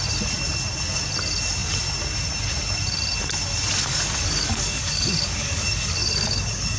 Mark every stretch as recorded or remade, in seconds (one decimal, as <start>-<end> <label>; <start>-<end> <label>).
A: 0.0-3.8 recorded; 3.8-6.8 remade